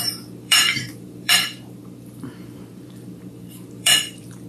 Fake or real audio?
fake